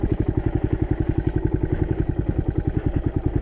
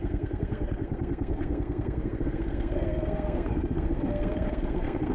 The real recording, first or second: first